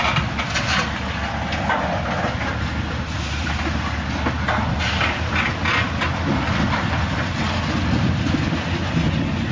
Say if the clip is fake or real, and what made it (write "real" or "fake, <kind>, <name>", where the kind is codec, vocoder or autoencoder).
real